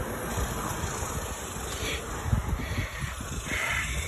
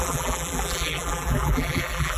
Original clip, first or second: first